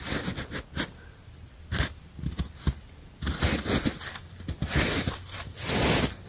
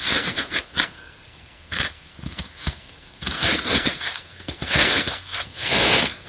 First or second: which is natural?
first